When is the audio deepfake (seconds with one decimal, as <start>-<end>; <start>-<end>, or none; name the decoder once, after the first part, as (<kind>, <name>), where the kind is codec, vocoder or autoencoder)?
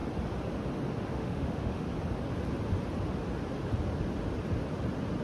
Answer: 1.1-1.9 (autoencoder, DAC-VAE)